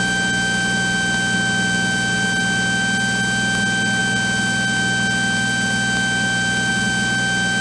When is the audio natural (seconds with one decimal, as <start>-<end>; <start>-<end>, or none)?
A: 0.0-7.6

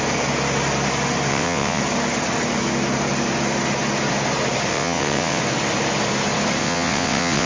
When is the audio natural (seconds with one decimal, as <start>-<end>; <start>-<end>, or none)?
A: 0.0-1.3; 1.8-4.7; 5.4-6.6

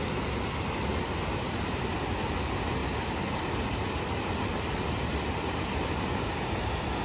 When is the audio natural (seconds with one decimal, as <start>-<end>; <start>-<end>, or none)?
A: 0.0-7.0